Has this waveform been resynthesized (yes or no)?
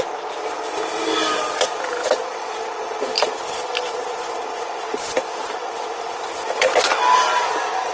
no